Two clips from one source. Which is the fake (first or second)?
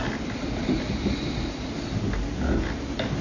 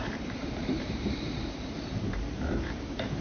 second